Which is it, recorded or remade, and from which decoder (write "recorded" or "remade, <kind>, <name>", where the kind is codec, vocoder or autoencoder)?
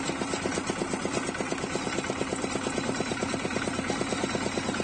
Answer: recorded